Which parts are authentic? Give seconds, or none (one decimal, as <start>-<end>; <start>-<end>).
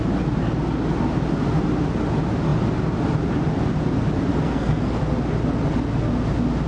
0.0-4.3; 5.0-6.7